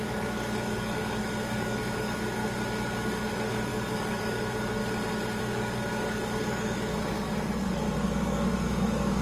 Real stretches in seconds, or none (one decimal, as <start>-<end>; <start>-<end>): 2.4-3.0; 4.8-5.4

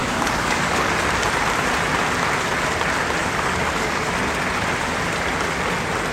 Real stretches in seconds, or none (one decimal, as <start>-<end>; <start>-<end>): 0.9-3.2; 4.1-6.1

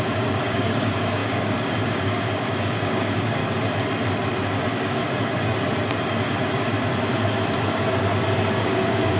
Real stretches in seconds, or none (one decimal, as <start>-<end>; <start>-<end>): 3.4-4.4; 5.0-8.4